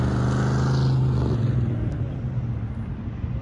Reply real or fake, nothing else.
real